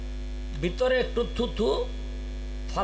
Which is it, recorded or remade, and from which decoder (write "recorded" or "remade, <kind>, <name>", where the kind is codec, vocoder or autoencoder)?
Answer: recorded